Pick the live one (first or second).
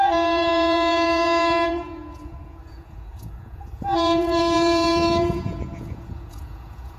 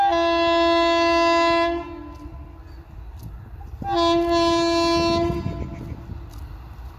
second